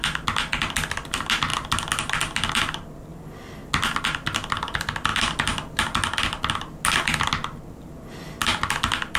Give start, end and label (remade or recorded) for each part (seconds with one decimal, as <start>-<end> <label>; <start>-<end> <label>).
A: 0.0-8.5 recorded; 8.5-9.2 remade